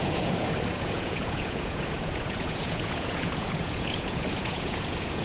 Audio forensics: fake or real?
fake